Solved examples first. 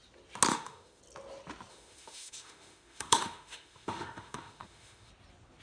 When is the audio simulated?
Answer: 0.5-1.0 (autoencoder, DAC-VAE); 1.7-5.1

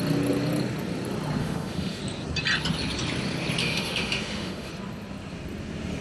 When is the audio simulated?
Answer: 1.4-2.0 (autoencoder, DAC-VAE); 3.6-4.7

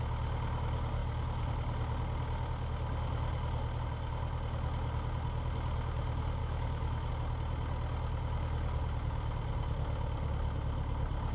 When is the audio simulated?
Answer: 6.4-7.1 (autoencoder, DAC-VAE)

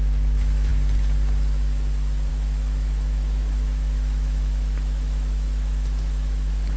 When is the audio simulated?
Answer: 0.0-0.7 (autoencoder, DAC-VAE); 2.3-6.8

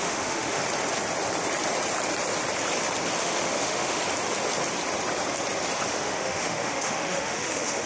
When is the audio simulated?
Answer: 0.0-0.6 (autoencoder, DAC-VAE); 3.2-4.0; 5.9-7.9